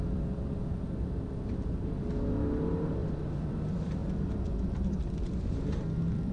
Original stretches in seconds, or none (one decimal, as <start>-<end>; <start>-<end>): 0.0-3.0; 3.6-4.0